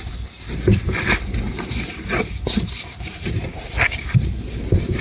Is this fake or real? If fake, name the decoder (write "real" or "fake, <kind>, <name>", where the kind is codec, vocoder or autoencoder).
real